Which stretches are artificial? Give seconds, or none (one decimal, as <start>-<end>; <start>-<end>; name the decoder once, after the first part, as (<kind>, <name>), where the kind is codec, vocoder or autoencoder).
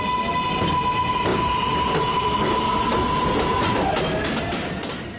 none